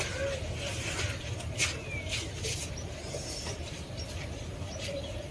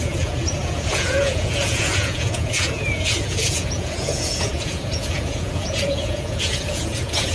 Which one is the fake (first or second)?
second